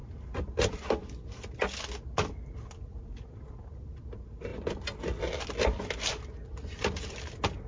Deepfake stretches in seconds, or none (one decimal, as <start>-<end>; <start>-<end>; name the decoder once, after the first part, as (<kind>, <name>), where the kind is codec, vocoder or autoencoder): none